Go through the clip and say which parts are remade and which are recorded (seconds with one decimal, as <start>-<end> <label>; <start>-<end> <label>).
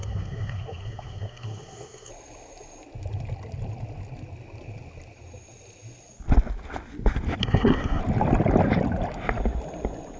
0.0-2.1 remade; 2.1-7.4 recorded; 7.4-8.0 remade; 8.0-10.2 recorded